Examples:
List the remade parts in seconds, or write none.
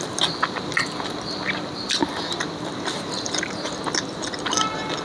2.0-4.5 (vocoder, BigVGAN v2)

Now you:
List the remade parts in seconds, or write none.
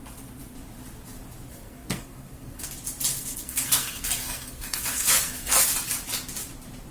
1.5-2.7 (codec, SNAC); 3.1-5.6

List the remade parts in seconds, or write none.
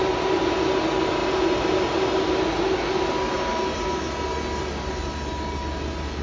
none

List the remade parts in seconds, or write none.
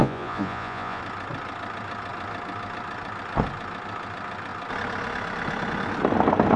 0.0-1.0 (vocoder, Vocos)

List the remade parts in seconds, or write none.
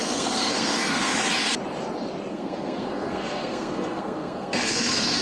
0.0-1.1 (codec, SNAC); 2.3-5.2